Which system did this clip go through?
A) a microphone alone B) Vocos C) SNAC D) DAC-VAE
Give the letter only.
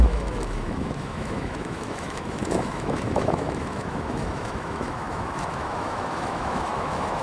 D